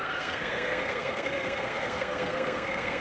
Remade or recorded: remade